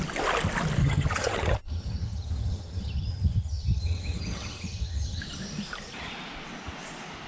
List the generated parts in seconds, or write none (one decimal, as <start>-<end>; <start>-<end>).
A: 0.8-5.2